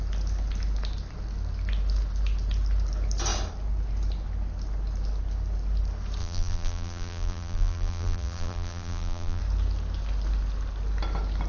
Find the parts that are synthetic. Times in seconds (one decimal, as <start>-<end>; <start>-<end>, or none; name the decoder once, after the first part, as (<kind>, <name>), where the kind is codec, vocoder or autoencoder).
6.2-9.4 (vocoder, BigVGAN v2)

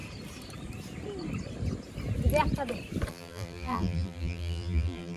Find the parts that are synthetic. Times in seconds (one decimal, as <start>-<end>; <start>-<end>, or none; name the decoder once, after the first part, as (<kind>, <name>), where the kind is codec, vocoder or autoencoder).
3.1-5.2 (vocoder, BigVGAN v2)

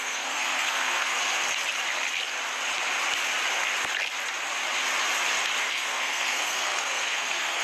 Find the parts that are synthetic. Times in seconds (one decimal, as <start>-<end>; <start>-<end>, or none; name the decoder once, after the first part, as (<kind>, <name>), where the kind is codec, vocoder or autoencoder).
0.0-1.1 (codec, SNAC); 5.7-7.6

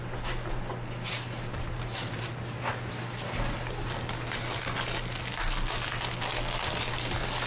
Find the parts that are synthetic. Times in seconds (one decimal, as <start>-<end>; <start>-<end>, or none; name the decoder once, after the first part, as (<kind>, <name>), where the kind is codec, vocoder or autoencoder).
none

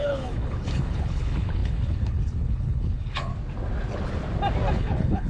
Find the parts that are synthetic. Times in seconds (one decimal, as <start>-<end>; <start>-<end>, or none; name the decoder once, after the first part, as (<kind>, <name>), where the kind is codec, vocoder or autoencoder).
0.0-3.3 (codec, HILCodec); 4.7-5.3

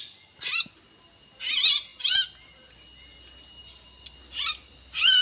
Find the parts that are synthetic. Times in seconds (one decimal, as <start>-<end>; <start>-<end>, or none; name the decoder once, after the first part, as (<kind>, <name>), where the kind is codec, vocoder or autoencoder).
none

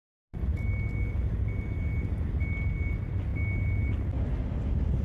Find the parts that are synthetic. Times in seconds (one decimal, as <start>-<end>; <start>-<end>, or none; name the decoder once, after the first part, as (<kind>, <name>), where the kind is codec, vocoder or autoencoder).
none

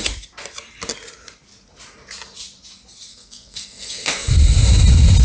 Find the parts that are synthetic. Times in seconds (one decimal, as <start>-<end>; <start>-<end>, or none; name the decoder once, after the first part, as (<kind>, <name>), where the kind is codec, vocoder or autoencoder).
3.1-4.3 (codec, SNAC)